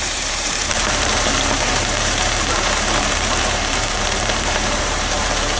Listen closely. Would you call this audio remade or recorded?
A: remade